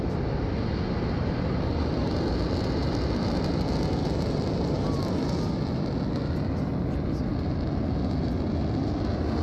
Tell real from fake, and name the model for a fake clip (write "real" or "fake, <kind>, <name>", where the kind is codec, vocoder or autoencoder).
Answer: real